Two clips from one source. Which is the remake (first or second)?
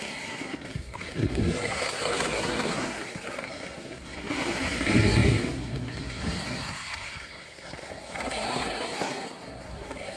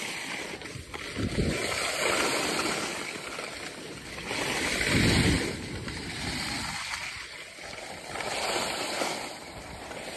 first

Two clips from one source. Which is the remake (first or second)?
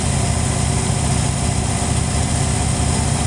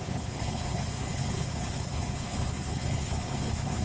second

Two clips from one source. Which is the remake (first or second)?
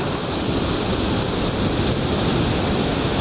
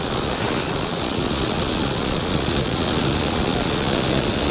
second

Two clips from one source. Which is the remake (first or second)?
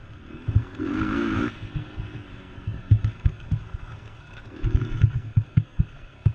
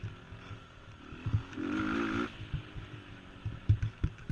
first